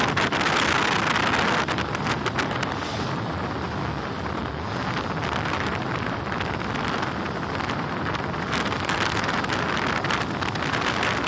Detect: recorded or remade recorded